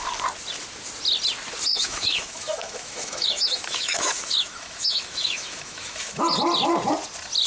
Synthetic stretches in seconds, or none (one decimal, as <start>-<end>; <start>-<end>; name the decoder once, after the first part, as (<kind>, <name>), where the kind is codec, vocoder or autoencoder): 1.7-6.2 (autoencoder, DAC-VAE)